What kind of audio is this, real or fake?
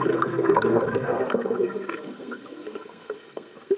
fake